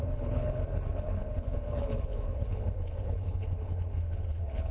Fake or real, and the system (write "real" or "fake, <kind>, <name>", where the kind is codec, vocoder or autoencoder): fake, codec, HILCodec